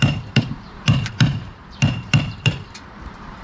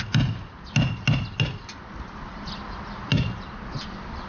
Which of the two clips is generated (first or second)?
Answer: first